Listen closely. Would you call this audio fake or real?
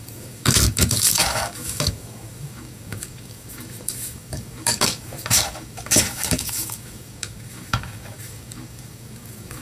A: fake